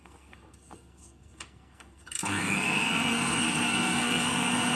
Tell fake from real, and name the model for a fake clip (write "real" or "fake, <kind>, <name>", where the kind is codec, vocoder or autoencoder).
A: fake, codec, SNAC